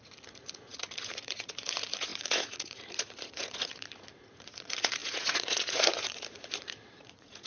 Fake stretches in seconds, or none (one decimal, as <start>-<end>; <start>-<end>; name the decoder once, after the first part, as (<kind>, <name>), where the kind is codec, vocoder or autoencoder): 0.0-7.5 (vocoder, Vocos)